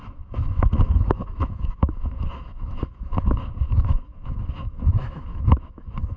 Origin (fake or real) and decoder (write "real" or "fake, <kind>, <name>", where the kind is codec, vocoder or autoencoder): fake, autoencoder, DAC-VAE